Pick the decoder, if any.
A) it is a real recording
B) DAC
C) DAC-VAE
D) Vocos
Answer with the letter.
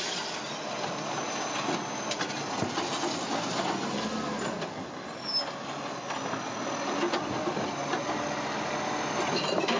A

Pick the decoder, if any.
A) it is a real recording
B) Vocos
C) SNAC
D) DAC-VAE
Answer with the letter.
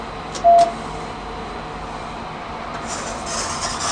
A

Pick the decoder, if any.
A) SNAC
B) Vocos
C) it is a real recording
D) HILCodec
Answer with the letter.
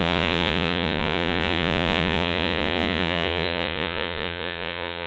B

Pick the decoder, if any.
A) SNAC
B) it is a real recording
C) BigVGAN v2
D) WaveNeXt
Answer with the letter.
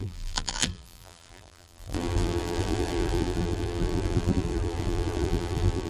C